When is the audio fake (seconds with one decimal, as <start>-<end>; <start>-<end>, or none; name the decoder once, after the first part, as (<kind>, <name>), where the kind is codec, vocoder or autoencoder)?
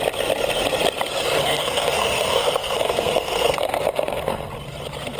1.4-4.5 (codec, SNAC)